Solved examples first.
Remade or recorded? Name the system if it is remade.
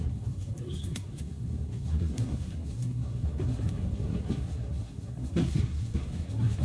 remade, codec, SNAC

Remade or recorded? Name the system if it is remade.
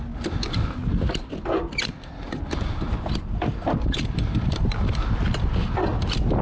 recorded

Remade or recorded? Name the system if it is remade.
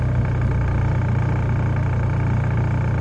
recorded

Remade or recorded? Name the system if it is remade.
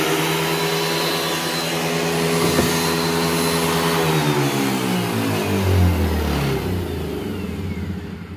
recorded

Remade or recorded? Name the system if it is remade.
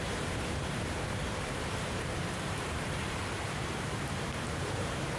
remade, vocoder, BigVGAN v2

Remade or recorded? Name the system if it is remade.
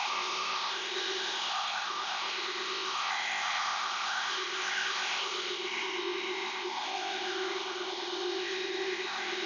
remade, codec, ZipCodec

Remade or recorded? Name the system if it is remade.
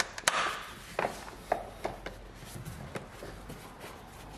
recorded